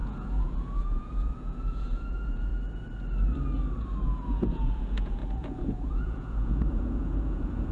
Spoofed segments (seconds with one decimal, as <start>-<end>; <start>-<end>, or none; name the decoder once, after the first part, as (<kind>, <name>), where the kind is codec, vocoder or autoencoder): 0.0-2.5 (vocoder, Vocos); 4.0-7.7